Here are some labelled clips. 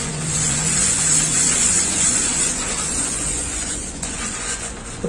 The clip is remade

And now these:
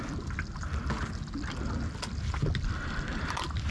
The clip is recorded